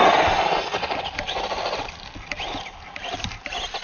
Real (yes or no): yes